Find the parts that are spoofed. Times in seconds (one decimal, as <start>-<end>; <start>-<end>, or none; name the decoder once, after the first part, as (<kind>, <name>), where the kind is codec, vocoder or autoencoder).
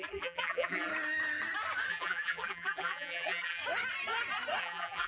0.0-0.9 (vocoder, BigVGAN v2); 1.9-3.6; 4.6-5.1